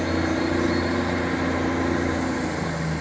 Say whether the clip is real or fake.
real